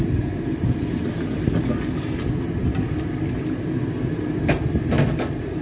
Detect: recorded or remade recorded